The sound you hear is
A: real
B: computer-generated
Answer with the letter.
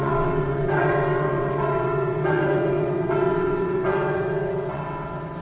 B